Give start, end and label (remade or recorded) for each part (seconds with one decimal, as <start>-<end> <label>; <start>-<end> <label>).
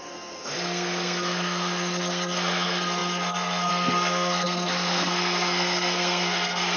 0.0-6.8 remade